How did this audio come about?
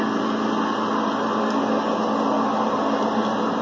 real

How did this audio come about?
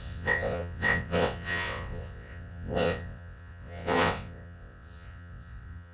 fake